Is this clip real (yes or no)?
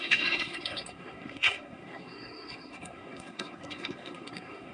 no